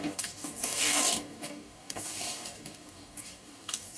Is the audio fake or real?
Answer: fake